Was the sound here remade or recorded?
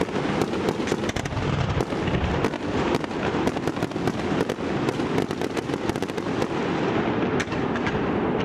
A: recorded